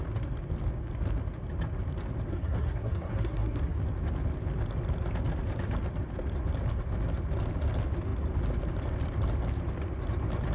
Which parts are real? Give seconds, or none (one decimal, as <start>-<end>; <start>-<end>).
0.0-2.3; 3.8-10.5